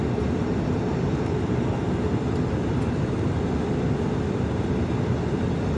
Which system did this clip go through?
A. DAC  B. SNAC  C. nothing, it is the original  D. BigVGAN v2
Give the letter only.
C